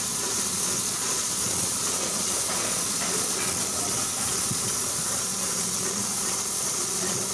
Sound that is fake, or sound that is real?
fake